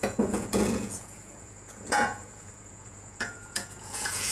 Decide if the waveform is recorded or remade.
remade